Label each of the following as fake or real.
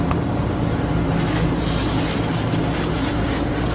real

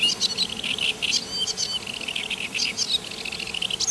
real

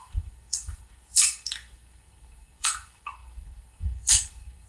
fake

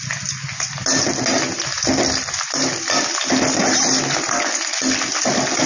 real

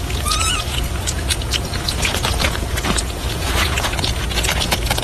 fake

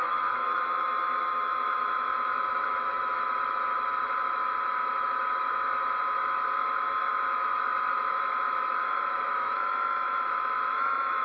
fake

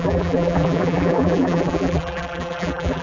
fake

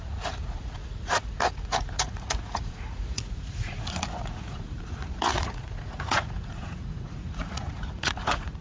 fake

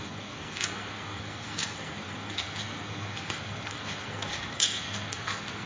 fake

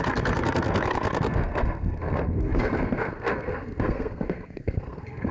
fake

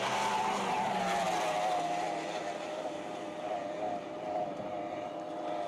real